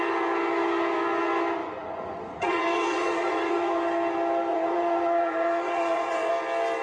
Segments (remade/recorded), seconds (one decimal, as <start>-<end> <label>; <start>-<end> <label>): 0.0-1.6 recorded; 1.6-3.7 remade; 3.7-4.5 recorded; 4.5-6.3 remade; 6.3-6.8 recorded